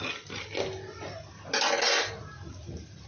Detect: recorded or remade recorded